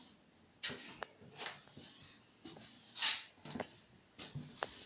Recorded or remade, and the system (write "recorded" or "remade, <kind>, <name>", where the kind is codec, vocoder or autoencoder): recorded